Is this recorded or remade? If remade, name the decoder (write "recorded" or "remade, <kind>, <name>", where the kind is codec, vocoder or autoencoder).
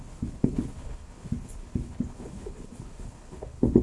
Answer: remade, codec, HILCodec